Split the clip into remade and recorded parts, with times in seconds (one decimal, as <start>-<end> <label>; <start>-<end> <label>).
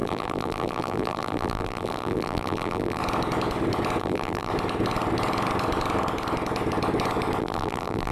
0.0-3.0 remade; 3.0-4.0 recorded; 4.0-4.5 remade; 4.5-7.4 recorded; 7.4-8.1 remade